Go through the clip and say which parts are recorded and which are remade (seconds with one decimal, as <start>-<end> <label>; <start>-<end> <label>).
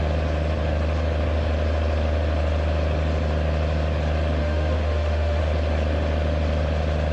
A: 0.0-4.4 recorded; 4.4-5.4 remade; 5.4-7.1 recorded